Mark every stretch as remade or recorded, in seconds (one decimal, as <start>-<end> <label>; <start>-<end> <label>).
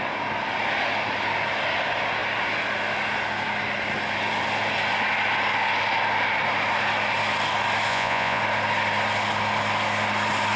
0.0-7.9 recorded; 7.9-8.4 remade; 8.4-10.6 recorded